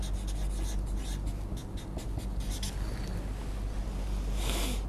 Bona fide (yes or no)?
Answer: yes